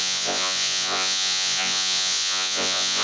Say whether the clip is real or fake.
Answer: fake